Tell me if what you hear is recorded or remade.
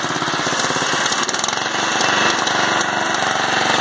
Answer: recorded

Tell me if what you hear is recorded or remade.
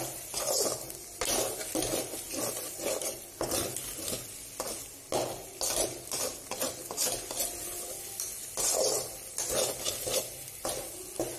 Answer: recorded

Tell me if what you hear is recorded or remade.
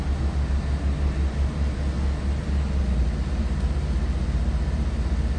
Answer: recorded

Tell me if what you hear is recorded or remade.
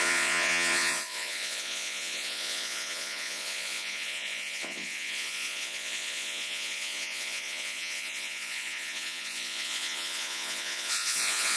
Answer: remade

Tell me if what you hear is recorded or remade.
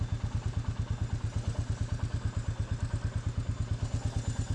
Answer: recorded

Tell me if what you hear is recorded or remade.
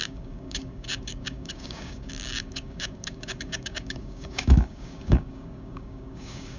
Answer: remade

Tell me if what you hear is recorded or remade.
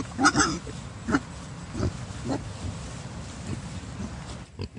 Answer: recorded